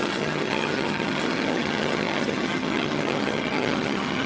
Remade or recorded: remade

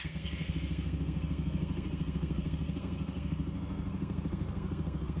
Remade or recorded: remade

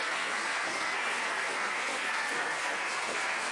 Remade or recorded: remade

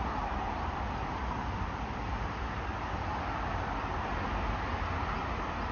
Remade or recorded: recorded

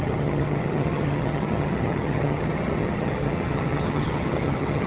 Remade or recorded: remade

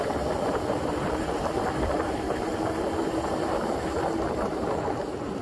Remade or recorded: remade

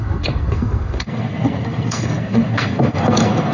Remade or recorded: remade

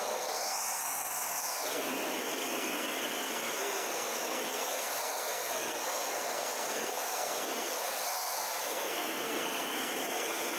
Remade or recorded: remade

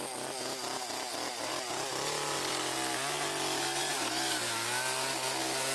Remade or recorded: recorded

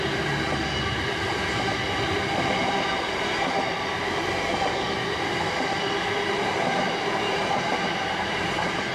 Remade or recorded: recorded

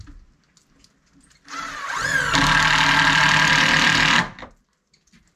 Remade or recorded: recorded